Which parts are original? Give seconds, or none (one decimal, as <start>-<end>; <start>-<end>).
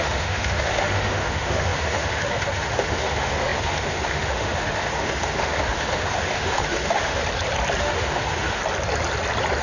7.2-7.8; 8.6-9.6